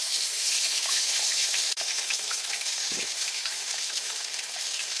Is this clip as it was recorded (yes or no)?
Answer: no